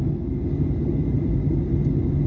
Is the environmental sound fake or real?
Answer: real